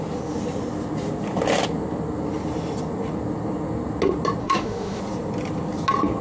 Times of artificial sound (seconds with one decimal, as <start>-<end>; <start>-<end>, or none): 4.4-5.0